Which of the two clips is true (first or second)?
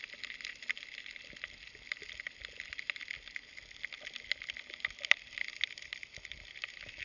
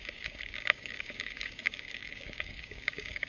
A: first